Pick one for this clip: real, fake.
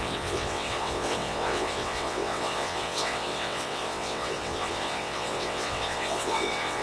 fake